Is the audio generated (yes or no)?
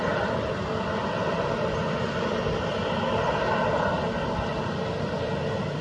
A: no